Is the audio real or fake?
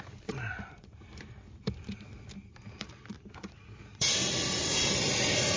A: real